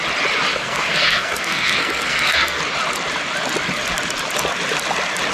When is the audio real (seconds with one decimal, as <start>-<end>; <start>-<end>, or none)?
0.0-0.5; 2.6-5.3